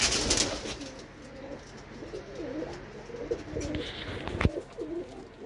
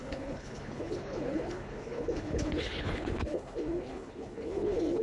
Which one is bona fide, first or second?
first